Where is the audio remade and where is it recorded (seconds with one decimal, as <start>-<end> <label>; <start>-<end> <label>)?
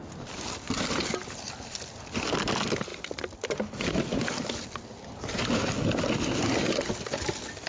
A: 0.0-7.7 recorded